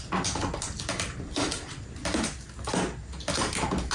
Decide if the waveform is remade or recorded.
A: recorded